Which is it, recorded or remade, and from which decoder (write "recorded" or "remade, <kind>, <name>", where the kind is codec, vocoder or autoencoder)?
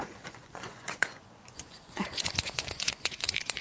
remade, vocoder, Vocos